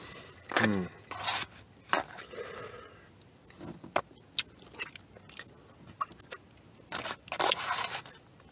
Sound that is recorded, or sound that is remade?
recorded